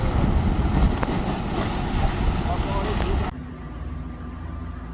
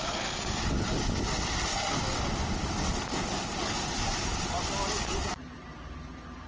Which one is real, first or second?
first